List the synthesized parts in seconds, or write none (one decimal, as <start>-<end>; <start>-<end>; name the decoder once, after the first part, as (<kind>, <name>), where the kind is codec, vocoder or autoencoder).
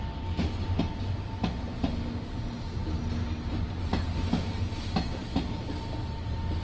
none